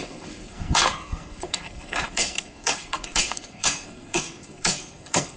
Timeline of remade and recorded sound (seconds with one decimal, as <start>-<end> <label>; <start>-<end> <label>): 0.0-5.4 remade